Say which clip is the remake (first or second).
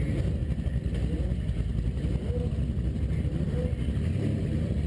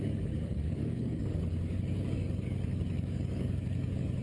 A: second